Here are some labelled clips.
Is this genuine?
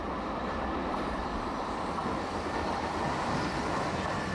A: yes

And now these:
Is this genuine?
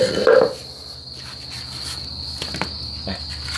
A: yes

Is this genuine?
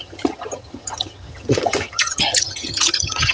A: no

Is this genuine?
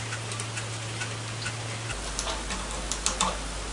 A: yes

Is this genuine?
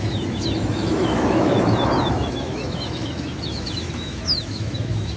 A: no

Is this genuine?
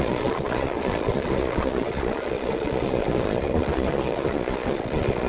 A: no